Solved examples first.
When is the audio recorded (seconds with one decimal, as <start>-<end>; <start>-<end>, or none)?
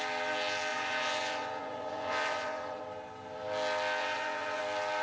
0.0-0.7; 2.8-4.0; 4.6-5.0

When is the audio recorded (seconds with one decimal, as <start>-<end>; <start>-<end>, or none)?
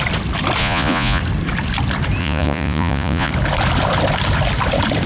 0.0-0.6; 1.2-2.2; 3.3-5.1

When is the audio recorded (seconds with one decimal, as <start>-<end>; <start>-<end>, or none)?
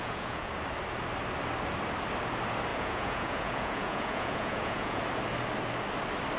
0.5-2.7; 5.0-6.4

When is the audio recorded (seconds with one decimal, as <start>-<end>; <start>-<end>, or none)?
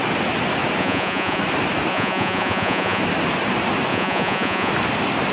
0.0-0.8; 1.4-1.9; 3.0-3.9; 4.7-5.3